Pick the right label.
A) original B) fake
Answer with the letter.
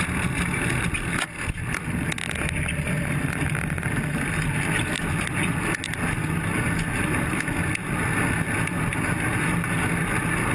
A